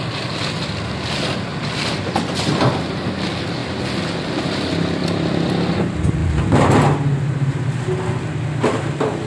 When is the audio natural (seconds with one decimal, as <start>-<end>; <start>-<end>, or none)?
0.0-1.5; 2.7-3.6; 4.4-5.0; 5.7-9.3